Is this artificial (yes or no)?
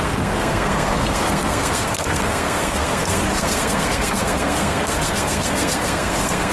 yes